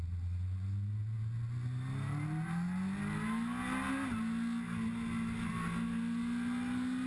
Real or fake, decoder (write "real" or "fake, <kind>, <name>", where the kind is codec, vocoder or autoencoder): real